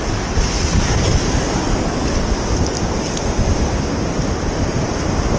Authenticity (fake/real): real